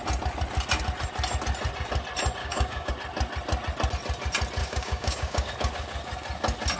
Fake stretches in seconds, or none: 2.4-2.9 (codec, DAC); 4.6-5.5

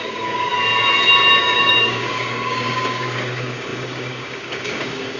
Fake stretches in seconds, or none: 0.0-0.5 (codec, DAC); 1.4-5.2

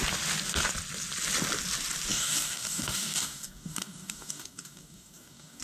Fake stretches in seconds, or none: 2.1-5.6 (codec, DAC)